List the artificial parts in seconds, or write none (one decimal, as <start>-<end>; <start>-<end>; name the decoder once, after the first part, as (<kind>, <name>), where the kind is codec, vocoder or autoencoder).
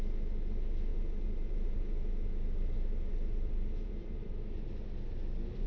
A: 0.9-4.3 (vocoder, BigVGAN v2)